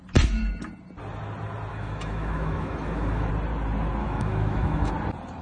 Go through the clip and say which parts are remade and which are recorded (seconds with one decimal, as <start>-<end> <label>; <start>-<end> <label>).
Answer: 0.0-1.7 recorded; 1.7-3.3 remade; 3.3-4.0 recorded; 4.0-4.9 remade; 4.9-5.4 recorded